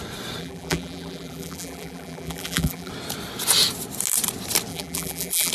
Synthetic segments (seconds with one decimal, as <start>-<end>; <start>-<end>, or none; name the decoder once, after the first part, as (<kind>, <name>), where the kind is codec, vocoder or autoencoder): 0.4-2.9 (vocoder, BigVGAN v2); 4.7-5.5